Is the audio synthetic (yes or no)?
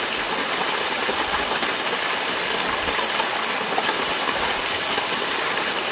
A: no